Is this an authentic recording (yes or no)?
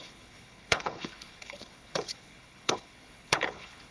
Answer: no